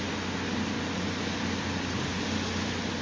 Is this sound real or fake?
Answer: real